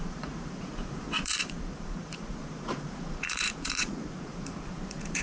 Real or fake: fake